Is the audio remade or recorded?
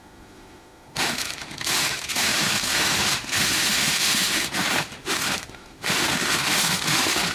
remade